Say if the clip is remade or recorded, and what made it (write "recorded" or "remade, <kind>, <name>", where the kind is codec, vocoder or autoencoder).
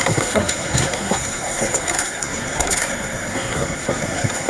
remade, codec, SNAC